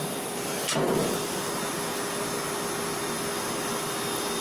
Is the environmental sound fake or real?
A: real